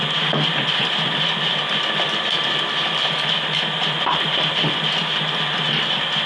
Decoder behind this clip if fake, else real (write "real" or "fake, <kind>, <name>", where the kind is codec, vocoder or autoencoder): real